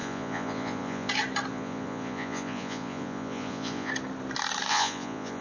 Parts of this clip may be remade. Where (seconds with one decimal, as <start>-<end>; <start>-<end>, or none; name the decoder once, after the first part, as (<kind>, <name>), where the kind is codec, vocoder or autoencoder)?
0.0-1.1 (vocoder, Vocos); 1.5-3.9; 4.7-5.4